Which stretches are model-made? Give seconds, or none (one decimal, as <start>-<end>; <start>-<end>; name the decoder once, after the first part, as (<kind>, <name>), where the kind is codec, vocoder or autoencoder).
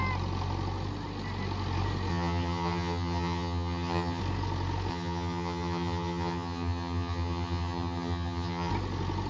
2.1-4.2 (vocoder, HiFi-GAN); 4.9-8.7